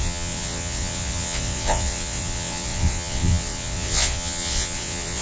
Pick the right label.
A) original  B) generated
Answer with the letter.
B